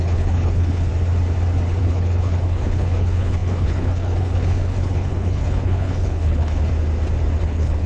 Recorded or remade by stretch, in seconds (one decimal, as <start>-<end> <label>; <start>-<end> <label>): 0.0-0.9 remade; 0.9-1.8 recorded; 1.8-6.7 remade; 6.7-7.4 recorded; 7.4-7.9 remade